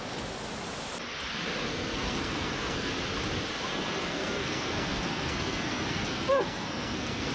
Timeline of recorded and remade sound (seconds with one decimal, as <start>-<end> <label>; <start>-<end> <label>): 0.0-1.7 recorded; 1.7-2.9 remade; 2.9-3.7 recorded; 3.7-7.3 remade